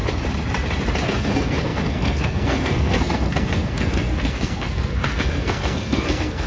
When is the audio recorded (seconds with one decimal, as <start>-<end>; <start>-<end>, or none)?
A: 0.0-1.0